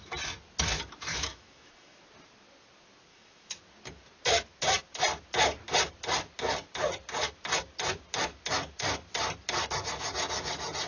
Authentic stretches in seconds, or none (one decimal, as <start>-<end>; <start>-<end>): 0.0-1.1; 2.0-3.1; 3.6-10.9